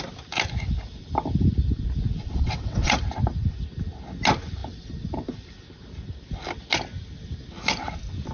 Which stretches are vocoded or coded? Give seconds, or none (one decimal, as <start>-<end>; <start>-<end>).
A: 2.2-3.1